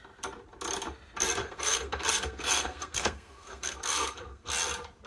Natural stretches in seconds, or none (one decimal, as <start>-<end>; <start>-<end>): 0.0-1.4; 4.5-5.1